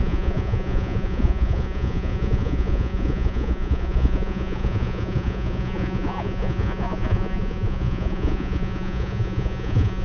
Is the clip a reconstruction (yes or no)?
yes